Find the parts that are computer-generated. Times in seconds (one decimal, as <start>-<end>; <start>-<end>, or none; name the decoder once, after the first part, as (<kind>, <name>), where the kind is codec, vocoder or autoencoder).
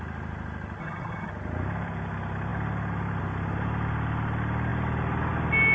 0.8-1.3 (vocoder, HiFi-GAN)